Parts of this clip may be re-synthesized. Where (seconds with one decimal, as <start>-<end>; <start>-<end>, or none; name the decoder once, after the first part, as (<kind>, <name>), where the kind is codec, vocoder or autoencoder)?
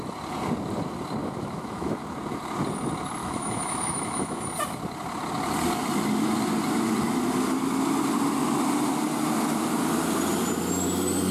1.2-2.0 (autoencoder, DAC-VAE); 3.2-4.4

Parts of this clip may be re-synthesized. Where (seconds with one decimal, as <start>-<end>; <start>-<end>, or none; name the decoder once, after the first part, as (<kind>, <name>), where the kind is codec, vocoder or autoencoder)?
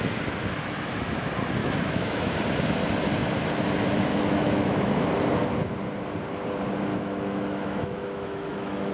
1.6-2.3 (autoencoder, DAC-VAE); 4.1-5.1; 6.9-8.9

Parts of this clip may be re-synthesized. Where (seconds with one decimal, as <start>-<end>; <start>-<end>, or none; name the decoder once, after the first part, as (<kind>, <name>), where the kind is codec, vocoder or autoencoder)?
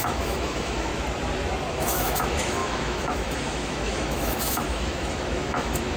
0.0-0.9 (autoencoder, DAC-VAE); 1.7-6.0